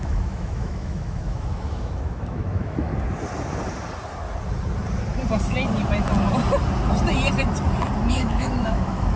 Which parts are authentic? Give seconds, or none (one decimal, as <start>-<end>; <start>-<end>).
2.9-8.1